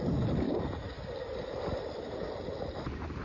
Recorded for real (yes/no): yes